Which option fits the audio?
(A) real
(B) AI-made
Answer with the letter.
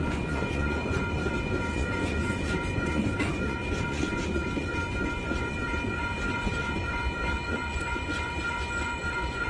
B